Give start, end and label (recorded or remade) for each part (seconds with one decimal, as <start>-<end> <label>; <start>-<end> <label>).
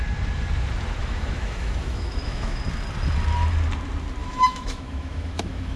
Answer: 0.0-1.0 recorded; 1.0-2.6 remade; 2.6-4.2 recorded; 4.2-5.8 remade